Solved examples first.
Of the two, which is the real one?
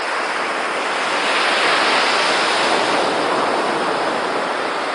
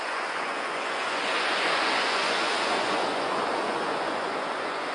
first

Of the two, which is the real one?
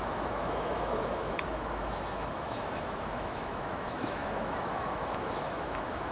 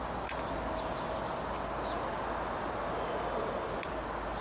second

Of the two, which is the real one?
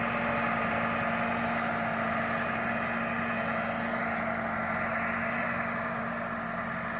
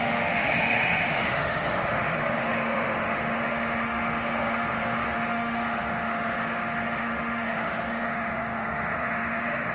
first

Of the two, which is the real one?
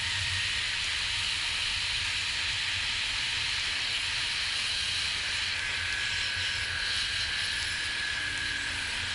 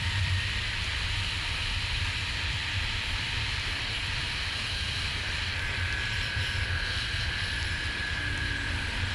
first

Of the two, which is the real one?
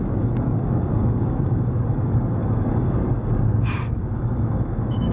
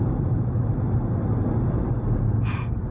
second